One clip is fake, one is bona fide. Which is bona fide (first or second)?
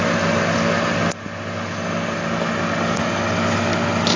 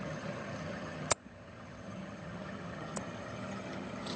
first